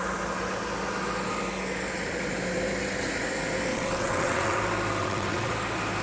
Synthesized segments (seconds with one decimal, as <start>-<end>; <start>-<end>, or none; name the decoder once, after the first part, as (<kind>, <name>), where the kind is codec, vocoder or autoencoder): 3.7-4.6 (vocoder, WaveNeXt); 5.0-5.5